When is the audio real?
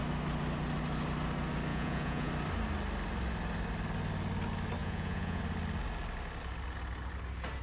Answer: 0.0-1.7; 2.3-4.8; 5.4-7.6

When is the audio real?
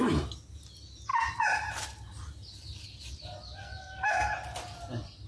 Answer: 0.0-3.6; 4.3-5.3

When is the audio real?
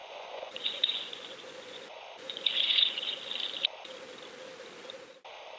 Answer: 3.2-5.6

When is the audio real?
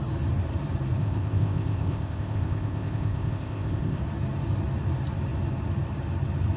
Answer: 0.0-1.0; 4.0-6.6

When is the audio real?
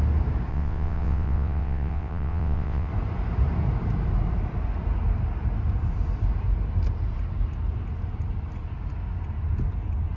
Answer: 0.0-0.5; 2.9-10.2